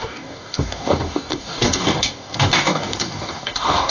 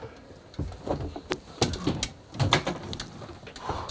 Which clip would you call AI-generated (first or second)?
first